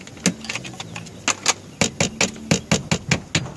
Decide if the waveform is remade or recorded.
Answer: recorded